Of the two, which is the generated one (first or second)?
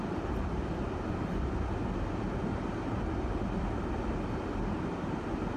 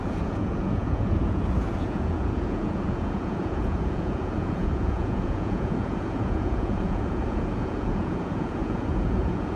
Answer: second